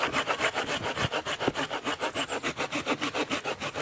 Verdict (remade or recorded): recorded